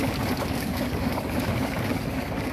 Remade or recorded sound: remade